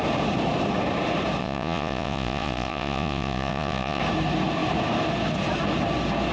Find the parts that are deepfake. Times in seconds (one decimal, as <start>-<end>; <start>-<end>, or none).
1.4-4.0